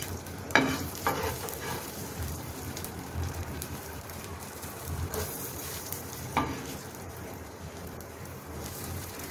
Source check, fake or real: fake